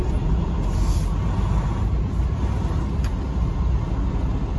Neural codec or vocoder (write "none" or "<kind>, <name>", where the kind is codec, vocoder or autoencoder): none